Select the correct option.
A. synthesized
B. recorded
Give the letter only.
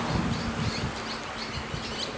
B